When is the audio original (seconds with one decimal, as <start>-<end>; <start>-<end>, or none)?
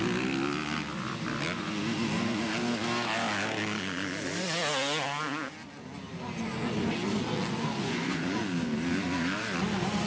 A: 0.0-7.8; 8.4-10.1